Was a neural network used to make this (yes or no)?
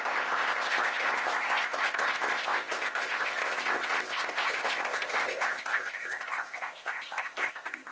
yes